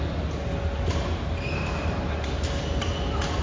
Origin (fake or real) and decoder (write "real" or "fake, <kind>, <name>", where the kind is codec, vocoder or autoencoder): real